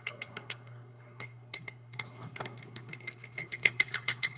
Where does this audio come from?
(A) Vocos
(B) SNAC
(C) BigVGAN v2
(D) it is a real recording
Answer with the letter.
B